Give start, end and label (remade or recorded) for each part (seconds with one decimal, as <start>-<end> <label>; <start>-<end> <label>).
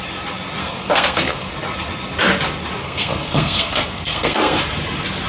0.0-0.6 recorded; 0.6-1.5 remade; 1.5-2.8 recorded; 2.8-4.6 remade; 4.6-5.3 recorded